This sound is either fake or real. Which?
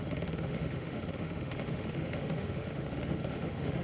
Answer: fake